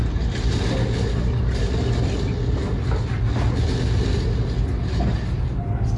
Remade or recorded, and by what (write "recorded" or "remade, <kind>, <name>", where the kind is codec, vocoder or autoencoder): recorded